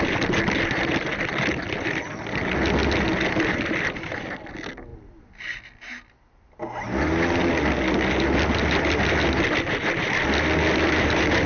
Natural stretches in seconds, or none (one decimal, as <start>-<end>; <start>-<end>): 0.0-4.9; 5.8-11.5